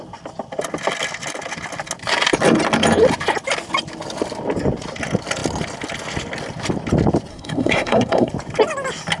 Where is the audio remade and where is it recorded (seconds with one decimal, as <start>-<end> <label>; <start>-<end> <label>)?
0.0-7.3 recorded; 7.3-8.3 remade; 8.3-9.2 recorded